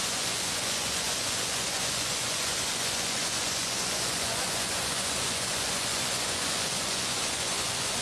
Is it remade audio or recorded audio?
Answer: remade